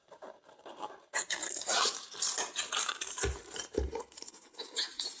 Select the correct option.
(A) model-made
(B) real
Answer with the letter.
A